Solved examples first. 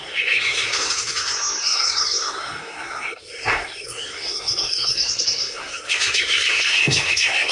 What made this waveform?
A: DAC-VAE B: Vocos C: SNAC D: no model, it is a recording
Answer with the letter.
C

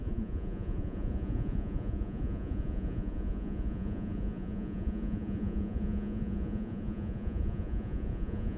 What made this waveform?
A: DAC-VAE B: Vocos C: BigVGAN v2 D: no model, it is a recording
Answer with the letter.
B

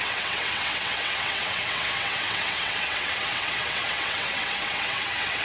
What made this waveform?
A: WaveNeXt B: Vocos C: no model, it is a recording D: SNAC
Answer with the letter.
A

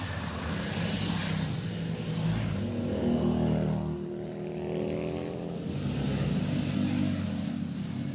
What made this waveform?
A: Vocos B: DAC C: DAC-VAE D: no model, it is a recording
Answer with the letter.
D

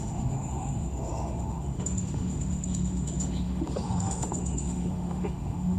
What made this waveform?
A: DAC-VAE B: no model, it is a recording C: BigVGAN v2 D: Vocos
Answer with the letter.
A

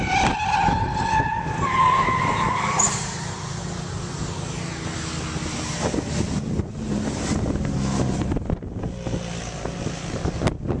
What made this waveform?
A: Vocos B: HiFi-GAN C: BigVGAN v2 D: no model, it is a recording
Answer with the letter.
D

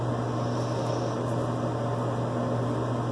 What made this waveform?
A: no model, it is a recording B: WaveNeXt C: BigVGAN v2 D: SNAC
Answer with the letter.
A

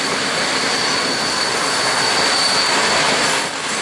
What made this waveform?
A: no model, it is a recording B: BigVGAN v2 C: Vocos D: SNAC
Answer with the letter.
A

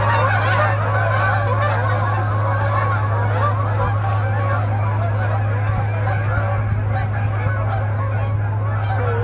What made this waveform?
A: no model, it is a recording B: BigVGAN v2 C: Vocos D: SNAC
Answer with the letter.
A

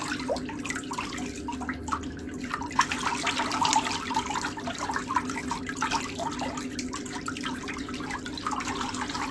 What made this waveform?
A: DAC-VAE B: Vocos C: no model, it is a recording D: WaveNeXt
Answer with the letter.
C